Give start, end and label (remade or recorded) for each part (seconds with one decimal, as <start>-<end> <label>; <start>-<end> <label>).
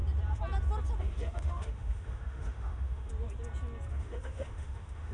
0.0-1.0 recorded; 1.0-3.1 remade; 3.1-3.9 recorded; 3.9-5.1 remade